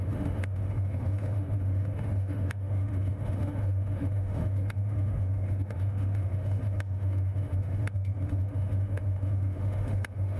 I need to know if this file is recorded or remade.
remade